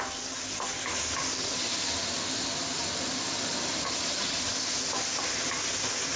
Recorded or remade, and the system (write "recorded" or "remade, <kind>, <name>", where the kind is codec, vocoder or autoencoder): recorded